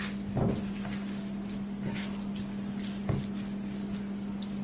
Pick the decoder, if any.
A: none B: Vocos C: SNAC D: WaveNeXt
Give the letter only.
A